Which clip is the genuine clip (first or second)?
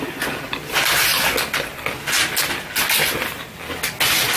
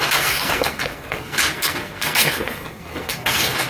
first